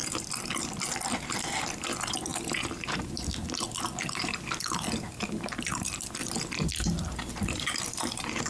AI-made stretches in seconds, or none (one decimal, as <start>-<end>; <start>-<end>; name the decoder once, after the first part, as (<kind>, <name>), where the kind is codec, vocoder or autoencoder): 0.0-8.5 (vocoder, BigVGAN v2)